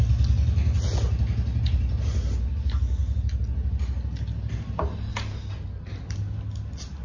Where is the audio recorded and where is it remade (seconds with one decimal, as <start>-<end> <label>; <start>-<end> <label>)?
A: 0.0-7.0 recorded

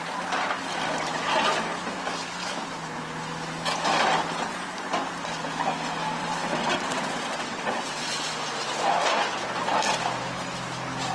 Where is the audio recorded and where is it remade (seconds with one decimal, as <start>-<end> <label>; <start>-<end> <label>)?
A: 0.0-6.2 recorded; 6.2-8.2 remade; 8.2-11.1 recorded